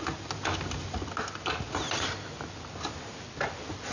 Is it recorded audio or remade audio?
recorded